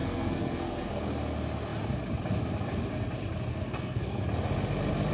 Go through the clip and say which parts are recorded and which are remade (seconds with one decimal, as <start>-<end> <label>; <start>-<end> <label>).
0.0-1.0 remade; 1.0-3.5 recorded; 3.5-4.2 remade; 4.2-5.1 recorded